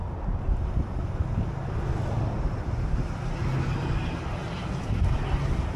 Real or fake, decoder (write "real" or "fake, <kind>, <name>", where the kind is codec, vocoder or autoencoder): real